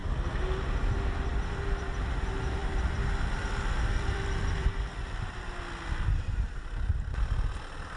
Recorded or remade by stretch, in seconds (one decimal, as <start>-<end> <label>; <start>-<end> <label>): 0.0-1.3 recorded; 1.3-1.9 remade; 1.9-2.6 recorded; 2.6-5.6 remade; 5.6-8.0 recorded